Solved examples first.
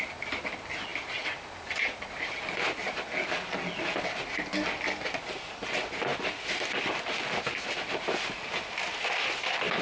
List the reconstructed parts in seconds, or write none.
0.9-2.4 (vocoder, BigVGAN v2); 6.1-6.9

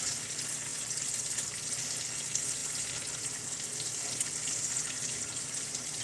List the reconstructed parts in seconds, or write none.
none